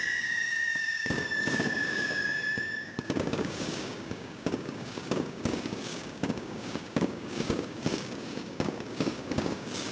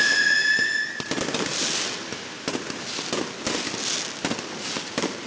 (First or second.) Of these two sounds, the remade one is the first